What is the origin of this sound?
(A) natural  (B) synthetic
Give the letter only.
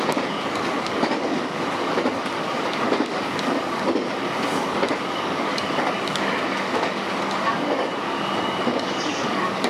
B